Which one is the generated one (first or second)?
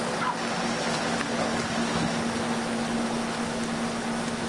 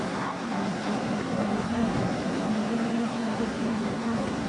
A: second